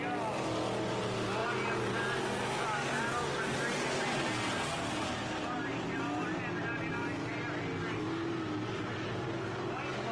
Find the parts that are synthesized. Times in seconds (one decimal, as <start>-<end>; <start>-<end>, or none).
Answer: none